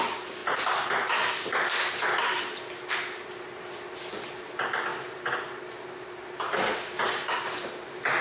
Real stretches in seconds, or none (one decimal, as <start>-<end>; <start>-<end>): 0.0-8.2